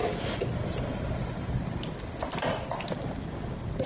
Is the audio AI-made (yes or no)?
no